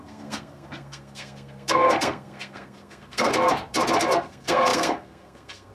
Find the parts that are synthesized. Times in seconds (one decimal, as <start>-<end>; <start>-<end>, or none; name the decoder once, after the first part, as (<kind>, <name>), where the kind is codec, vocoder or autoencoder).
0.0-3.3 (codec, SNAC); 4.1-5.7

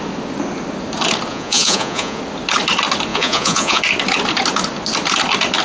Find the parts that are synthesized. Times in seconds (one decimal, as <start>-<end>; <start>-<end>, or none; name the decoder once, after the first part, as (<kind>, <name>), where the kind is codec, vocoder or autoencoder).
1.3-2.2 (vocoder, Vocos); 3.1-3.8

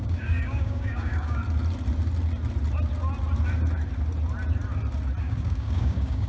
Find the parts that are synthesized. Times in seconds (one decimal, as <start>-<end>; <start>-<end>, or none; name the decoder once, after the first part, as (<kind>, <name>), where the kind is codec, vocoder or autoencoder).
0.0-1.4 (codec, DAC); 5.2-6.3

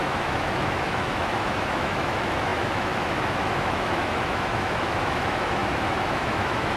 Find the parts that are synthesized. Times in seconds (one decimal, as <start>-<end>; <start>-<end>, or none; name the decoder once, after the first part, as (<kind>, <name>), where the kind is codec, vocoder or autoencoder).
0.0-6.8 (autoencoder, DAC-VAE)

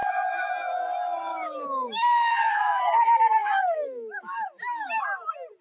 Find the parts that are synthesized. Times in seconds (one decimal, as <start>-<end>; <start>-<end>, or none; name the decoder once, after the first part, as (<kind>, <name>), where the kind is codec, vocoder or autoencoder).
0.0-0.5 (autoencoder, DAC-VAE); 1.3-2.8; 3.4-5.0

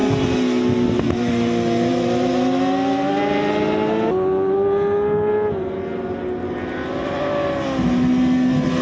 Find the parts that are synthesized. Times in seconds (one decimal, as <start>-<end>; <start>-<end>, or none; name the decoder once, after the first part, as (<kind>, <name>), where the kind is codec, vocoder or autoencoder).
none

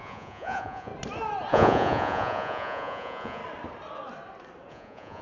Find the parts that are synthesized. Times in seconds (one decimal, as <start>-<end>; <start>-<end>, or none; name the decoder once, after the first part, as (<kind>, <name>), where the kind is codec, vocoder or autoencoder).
0.0-0.9 (vocoder, Vocos); 1.5-3.4; 4.7-5.2